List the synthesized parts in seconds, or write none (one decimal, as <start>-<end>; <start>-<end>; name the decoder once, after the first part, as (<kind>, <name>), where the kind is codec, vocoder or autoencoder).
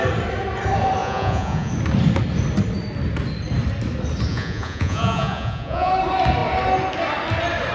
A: 1.0-1.7 (vocoder, Vocos); 4.3-5.9